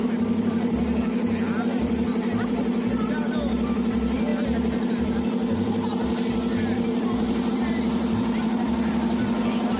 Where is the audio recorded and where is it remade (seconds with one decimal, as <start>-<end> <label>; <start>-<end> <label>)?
0.0-9.8 remade